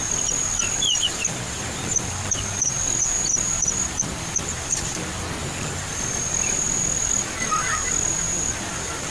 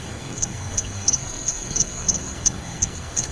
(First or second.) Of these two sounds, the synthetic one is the second